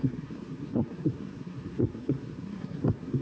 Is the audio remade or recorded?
remade